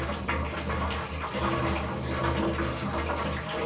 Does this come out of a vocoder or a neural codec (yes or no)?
no